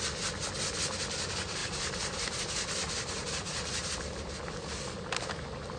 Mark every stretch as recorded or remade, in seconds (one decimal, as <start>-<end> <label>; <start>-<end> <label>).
0.0-1.6 recorded; 1.6-2.4 remade; 2.4-2.8 recorded; 2.8-4.4 remade; 4.4-5.8 recorded